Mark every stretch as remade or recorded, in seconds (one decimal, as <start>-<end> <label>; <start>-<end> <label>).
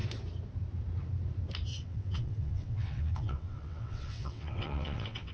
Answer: 0.0-1.7 recorded; 1.7-5.3 remade